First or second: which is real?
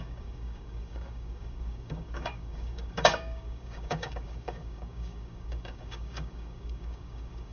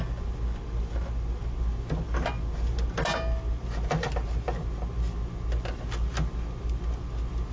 second